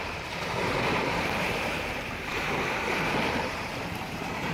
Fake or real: fake